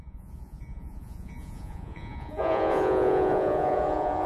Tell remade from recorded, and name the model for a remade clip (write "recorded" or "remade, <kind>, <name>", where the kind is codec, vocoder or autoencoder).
remade, vocoder, Vocos